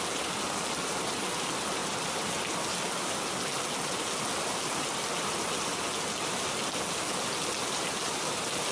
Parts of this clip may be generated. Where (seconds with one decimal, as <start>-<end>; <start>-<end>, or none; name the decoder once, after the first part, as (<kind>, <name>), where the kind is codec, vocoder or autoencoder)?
none